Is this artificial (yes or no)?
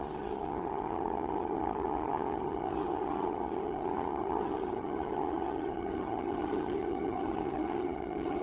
yes